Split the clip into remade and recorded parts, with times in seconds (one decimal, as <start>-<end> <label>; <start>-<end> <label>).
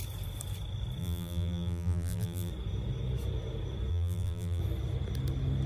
0.0-1.0 recorded; 1.0-2.5 remade; 2.5-3.9 recorded; 3.9-4.6 remade; 4.6-5.7 recorded